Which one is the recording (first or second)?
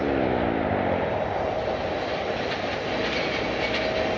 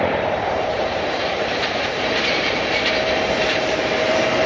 first